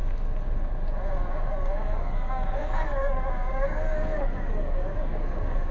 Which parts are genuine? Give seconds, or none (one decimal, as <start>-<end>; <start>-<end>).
0.0-1.3